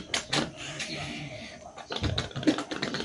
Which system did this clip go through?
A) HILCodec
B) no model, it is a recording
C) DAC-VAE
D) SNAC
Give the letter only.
B